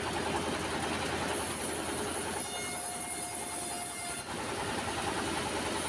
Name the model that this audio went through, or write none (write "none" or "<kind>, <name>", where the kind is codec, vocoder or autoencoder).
none